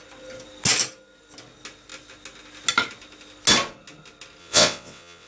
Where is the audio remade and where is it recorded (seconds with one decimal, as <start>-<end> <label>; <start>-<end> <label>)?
0.0-4.4 recorded; 4.4-5.3 remade